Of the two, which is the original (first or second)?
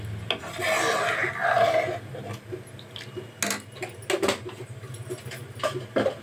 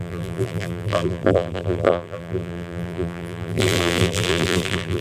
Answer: first